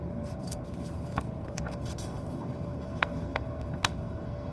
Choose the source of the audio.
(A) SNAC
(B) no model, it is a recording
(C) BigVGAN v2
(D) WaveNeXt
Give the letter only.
A